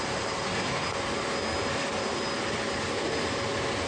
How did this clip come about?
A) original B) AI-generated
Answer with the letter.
A